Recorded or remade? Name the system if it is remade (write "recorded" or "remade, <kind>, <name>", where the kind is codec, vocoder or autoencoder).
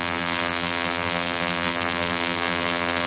remade, vocoder, BigVGAN v2